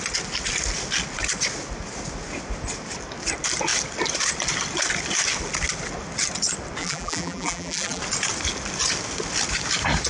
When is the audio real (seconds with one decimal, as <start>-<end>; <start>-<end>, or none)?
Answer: 0.0-6.8; 8.0-10.1